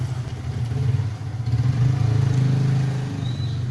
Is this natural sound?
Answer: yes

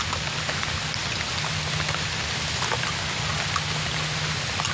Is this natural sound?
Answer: yes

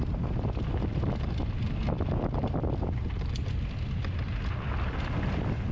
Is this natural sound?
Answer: yes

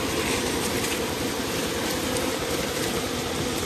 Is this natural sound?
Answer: yes